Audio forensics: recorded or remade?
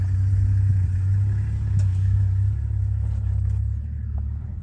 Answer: recorded